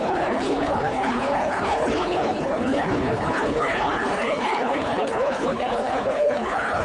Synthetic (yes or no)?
yes